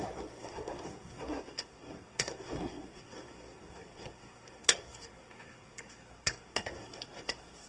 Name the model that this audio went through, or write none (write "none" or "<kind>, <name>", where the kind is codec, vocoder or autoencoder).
codec, SNAC